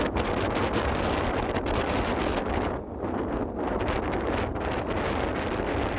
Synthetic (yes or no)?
no